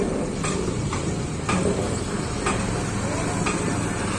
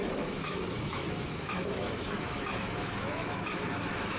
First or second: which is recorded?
first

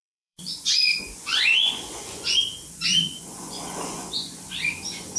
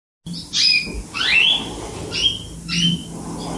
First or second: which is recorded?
second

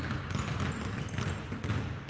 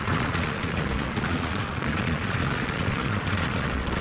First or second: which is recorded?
first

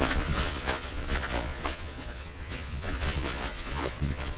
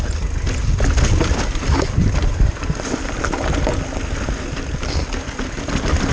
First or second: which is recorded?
second